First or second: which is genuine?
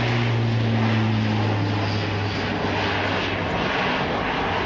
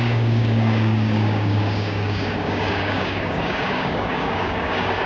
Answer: first